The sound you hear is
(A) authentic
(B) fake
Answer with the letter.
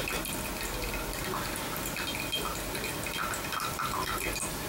A